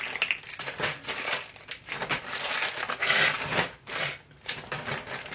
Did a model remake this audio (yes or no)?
no